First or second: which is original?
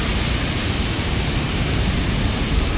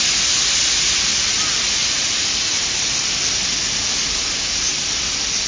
second